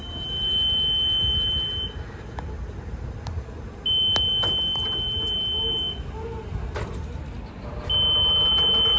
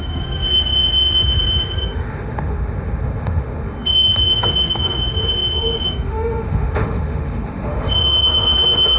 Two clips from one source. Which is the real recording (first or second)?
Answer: first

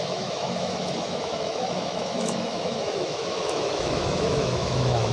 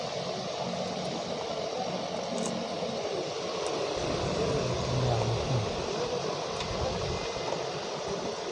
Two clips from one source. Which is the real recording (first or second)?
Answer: second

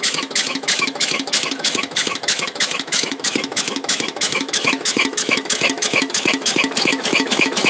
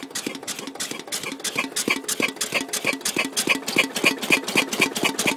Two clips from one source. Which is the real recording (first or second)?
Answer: second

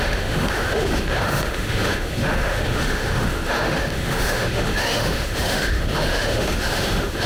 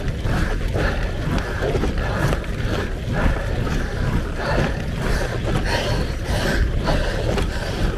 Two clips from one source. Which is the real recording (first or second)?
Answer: second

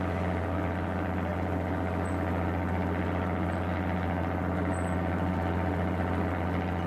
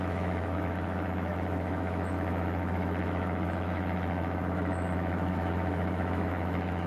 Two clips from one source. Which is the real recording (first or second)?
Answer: first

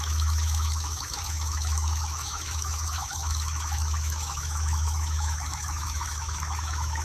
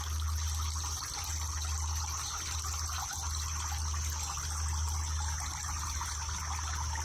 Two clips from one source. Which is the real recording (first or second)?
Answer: second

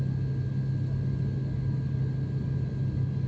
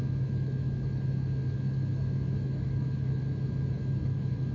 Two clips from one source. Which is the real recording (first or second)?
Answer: first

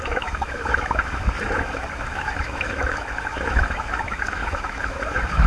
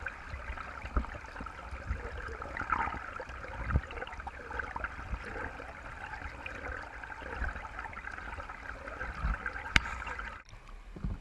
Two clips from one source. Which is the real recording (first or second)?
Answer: second